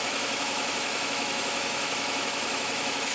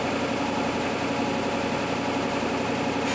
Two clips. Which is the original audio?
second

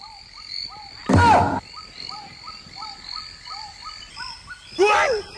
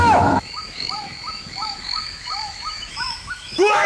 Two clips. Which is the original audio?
first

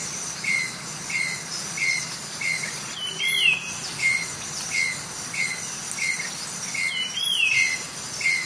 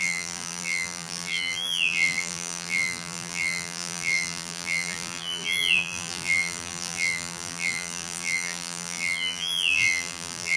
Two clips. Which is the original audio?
first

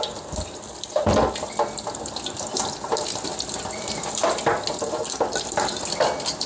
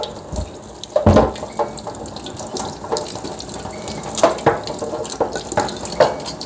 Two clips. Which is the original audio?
second